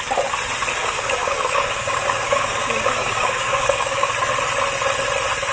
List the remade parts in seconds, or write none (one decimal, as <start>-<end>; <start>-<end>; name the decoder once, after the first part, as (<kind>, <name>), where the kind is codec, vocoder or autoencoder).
0.8-4.1 (codec, DAC)